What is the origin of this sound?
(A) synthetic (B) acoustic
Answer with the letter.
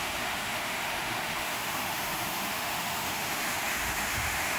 A